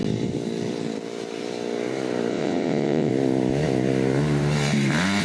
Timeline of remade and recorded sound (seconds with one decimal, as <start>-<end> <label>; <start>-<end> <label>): 0.0-2.3 recorded; 2.3-3.1 remade; 3.1-5.2 recorded

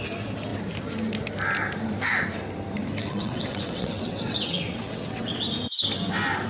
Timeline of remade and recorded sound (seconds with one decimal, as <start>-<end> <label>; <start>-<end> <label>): 0.0-3.0 recorded; 3.0-5.4 remade; 5.4-6.5 recorded

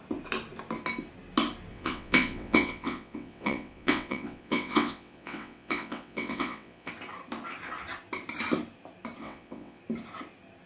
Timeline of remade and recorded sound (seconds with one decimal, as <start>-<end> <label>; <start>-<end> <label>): 0.0-1.7 recorded; 1.7-6.9 remade; 6.9-9.2 recorded; 9.2-9.8 remade; 9.8-10.7 recorded

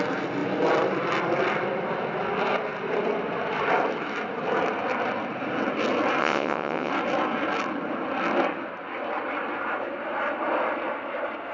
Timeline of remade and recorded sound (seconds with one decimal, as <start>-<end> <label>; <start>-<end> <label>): 0.0-6.2 recorded; 6.2-6.9 remade; 6.9-11.5 recorded

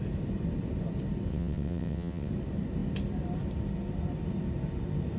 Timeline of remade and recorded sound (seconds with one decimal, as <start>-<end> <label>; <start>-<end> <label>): 0.0-1.3 recorded; 1.3-2.3 remade; 2.3-5.2 recorded